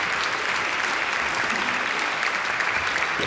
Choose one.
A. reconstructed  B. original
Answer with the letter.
B